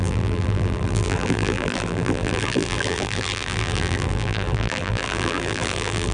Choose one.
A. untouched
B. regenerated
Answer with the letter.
B